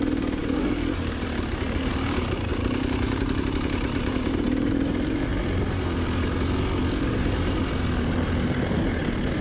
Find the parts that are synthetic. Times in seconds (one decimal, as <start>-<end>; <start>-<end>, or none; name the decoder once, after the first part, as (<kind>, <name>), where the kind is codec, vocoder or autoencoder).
0.0-5.3 (vocoder, BigVGAN v2); 7.1-9.4